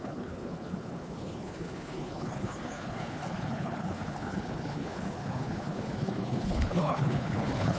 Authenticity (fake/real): fake